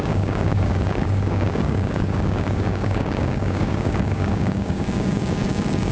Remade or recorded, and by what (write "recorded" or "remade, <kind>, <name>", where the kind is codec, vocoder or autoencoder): remade, codec, DAC